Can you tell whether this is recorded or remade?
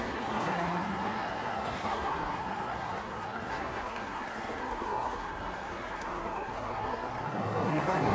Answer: remade